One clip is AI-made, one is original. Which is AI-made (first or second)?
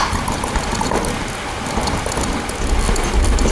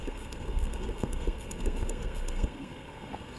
second